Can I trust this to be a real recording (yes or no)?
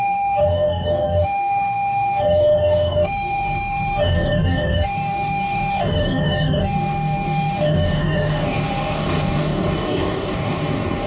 no